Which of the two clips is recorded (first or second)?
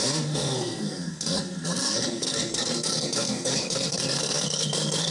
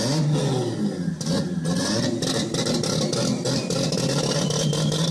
second